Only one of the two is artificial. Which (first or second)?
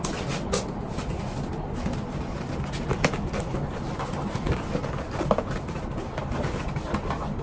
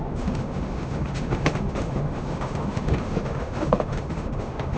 second